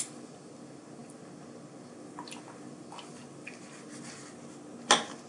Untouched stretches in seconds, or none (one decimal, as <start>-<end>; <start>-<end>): 0.0-5.3